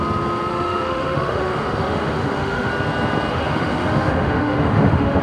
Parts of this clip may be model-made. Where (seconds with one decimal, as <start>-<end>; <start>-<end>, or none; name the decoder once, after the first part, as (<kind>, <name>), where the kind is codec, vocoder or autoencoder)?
0.5-2.7 (autoencoder, DAC-VAE); 3.3-5.2